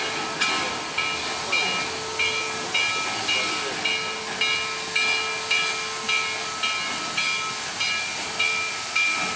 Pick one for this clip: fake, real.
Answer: real